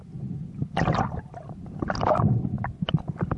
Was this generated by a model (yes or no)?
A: no